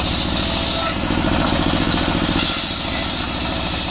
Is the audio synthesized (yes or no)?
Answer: no